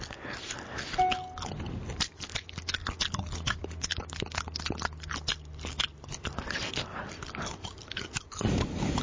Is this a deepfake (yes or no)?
no